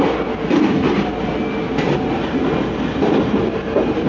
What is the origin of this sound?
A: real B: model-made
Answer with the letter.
A